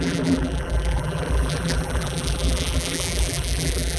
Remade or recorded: remade